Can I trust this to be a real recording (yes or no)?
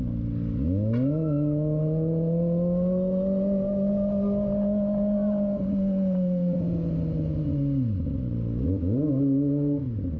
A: yes